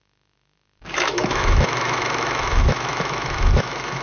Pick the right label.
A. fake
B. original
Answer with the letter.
A